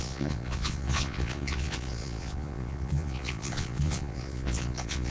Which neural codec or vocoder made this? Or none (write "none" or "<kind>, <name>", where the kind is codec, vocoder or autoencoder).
vocoder, Vocos